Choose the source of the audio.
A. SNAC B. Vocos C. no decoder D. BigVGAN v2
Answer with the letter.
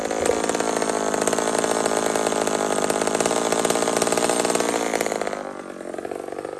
C